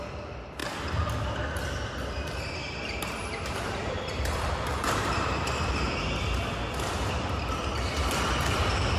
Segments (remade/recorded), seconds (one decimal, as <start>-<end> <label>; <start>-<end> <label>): 0.0-2.6 recorded; 2.6-6.0 remade; 6.0-9.0 recorded